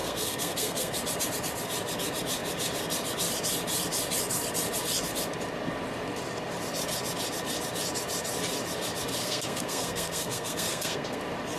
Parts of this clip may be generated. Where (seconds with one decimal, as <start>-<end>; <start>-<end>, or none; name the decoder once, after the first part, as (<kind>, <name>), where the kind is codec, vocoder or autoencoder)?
0.0-1.0 (codec, SNAC); 9.2-11.2